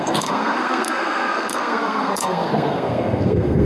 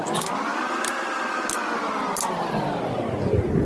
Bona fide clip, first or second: second